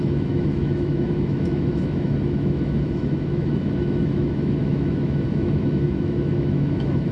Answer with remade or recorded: remade